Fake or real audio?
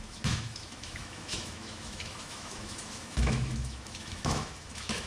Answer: fake